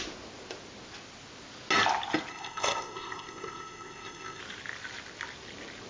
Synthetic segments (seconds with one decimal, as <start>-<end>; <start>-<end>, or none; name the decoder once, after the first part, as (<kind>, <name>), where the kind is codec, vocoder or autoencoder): 2.3-4.4 (codec, ZipCodec)